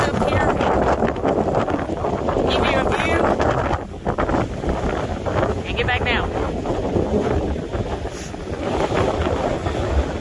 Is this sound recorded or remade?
recorded